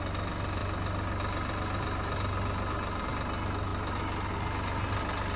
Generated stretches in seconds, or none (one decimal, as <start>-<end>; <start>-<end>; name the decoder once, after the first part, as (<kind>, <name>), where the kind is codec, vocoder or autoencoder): none